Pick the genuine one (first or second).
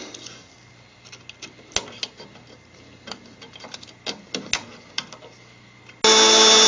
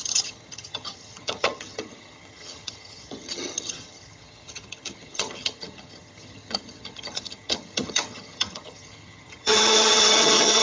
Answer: first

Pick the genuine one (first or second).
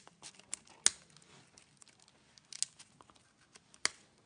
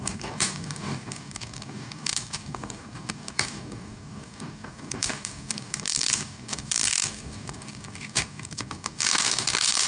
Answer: first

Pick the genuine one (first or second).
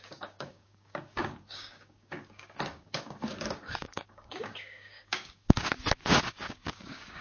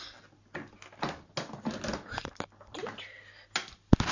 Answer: second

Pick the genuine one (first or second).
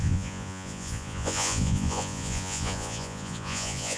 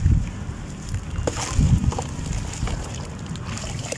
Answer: second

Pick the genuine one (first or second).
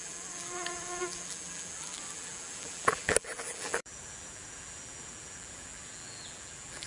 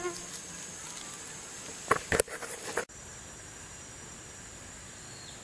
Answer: second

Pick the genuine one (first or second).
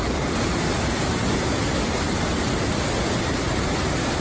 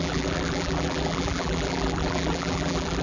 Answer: first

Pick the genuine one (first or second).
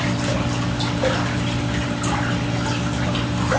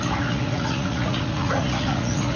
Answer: first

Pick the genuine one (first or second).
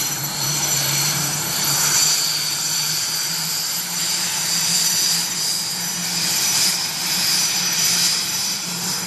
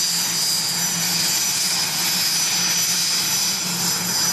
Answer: second